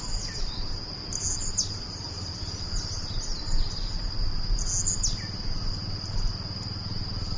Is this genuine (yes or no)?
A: yes